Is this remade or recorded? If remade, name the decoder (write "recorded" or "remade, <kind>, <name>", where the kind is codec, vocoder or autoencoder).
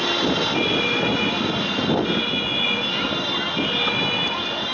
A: recorded